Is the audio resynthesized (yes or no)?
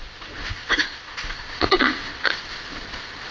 yes